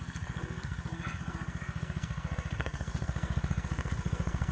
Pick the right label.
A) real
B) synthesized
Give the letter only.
B